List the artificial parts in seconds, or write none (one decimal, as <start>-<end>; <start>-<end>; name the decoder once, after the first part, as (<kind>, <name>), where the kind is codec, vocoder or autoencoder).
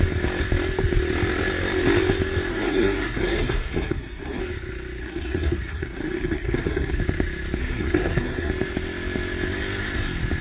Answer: 2.5-4.4 (codec, SNAC); 5.0-7.0; 7.6-8.5